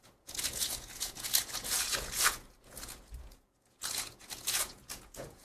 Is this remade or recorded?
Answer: remade